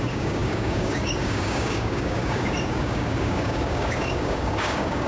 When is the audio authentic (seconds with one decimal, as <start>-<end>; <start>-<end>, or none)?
none